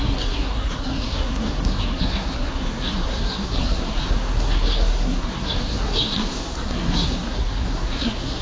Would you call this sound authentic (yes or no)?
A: no